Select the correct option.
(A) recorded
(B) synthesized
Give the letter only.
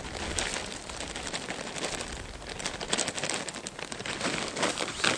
A